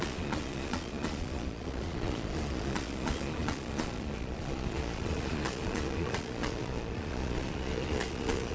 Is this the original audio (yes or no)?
no